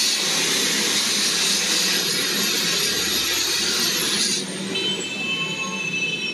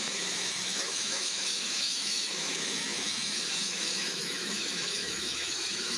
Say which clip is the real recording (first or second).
first